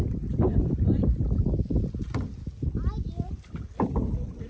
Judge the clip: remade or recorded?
recorded